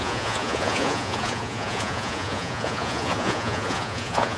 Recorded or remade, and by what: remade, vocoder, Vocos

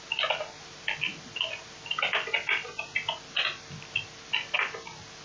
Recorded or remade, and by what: recorded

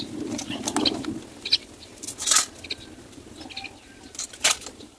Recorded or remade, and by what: recorded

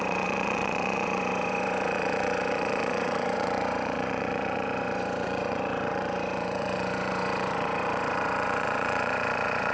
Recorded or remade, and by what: remade, vocoder, Vocos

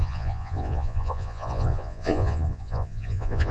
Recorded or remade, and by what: remade, vocoder, Vocos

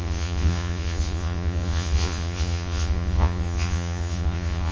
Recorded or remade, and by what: remade, vocoder, Vocos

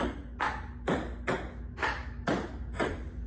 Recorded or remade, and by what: recorded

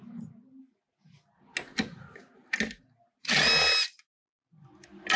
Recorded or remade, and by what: recorded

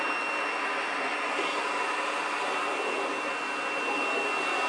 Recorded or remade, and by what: recorded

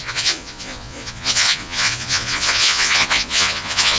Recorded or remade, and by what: remade, vocoder, Vocos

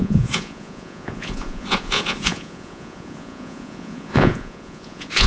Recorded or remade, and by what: remade, vocoder, Vocos